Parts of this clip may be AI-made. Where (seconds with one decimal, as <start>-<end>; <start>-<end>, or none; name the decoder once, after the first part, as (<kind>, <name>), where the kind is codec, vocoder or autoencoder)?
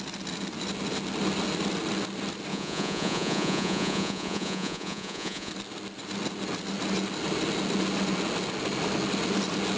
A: 2.5-5.5 (vocoder, Vocos)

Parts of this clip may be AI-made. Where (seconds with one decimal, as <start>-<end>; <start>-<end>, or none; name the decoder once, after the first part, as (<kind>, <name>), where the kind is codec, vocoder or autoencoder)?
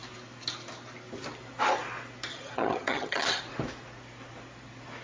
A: 2.3-3.4 (vocoder, HiFi-GAN)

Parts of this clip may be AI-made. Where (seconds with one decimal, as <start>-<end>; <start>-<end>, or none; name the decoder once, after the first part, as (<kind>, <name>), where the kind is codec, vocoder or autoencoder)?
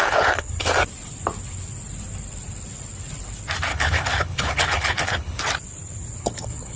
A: 0.0-0.7 (codec, HILCodec); 3.7-5.4; 6.2-6.8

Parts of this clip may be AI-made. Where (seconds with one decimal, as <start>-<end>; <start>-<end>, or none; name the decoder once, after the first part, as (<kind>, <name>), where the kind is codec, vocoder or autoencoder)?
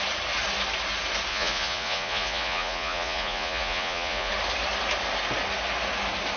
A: 1.3-4.3 (vocoder, Vocos)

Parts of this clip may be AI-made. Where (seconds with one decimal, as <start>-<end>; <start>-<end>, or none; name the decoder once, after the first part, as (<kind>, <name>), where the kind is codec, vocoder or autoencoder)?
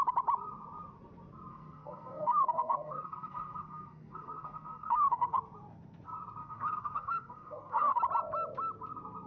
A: 1.5-5.4 (codec, SNAC); 6.4-8.0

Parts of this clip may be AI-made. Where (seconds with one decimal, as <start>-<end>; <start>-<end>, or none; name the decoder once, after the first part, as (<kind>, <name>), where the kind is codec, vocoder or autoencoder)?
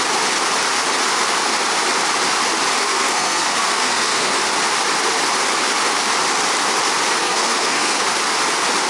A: 2.8-4.4 (codec, SNAC); 7.2-8.0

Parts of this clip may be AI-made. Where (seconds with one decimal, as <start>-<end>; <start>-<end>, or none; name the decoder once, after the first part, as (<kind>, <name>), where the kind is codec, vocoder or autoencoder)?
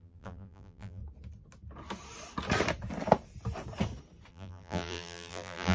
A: 0.0-1.0 (vocoder, BigVGAN v2); 4.3-5.7